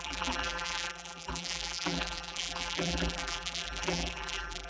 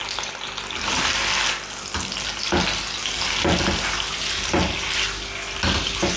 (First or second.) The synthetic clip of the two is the first